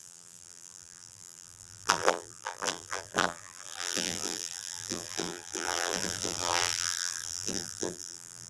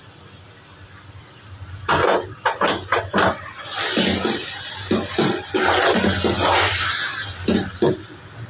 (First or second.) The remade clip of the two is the first